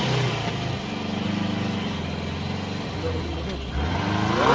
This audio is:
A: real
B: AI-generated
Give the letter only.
A